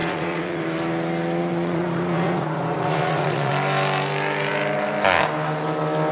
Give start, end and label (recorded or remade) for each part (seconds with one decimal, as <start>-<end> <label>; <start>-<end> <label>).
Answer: 0.0-0.6 remade; 0.6-1.5 recorded; 1.5-3.5 remade; 3.5-6.1 recorded